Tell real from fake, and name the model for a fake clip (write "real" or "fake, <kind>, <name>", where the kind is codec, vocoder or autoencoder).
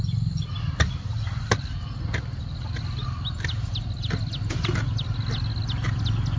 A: real